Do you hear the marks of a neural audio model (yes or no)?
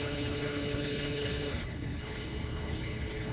yes